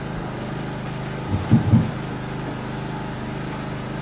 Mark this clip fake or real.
real